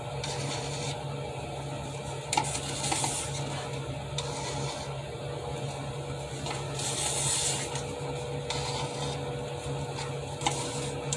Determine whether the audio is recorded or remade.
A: recorded